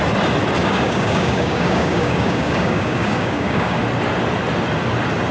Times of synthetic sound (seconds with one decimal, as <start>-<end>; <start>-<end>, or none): 0.6-3.8